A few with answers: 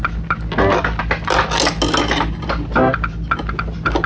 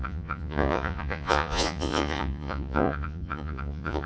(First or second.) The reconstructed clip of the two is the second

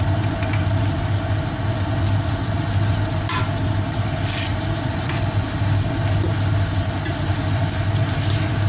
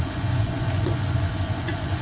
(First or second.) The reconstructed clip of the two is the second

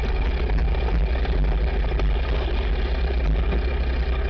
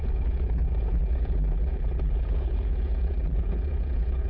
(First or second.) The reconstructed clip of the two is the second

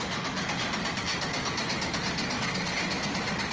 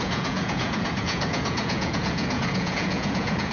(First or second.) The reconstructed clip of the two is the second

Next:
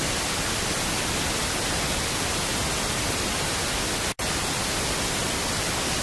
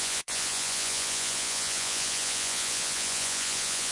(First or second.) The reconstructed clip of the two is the second